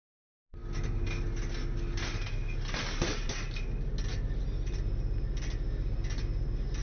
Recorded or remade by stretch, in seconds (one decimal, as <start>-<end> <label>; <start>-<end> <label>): 0.0-6.8 recorded